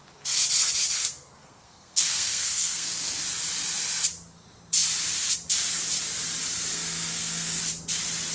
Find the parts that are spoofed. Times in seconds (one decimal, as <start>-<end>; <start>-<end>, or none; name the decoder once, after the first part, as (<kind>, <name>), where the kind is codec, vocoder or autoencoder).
1.0-3.2 (codec, SNAC); 6.7-7.6

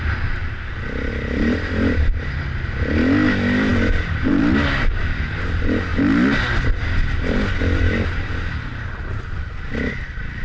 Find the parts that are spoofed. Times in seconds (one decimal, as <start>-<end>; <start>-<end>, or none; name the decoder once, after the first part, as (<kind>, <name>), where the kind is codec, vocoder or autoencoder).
none

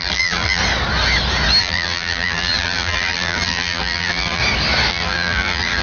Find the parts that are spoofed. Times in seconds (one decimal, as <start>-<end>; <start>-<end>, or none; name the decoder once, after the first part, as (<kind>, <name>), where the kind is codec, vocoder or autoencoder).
0.0-0.6 (vocoder, BigVGAN v2); 1.6-4.4; 4.9-5.8

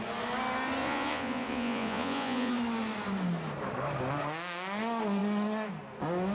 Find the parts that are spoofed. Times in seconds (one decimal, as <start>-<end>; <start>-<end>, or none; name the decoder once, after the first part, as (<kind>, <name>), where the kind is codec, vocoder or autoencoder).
0.8-2.5 (vocoder, Vocos)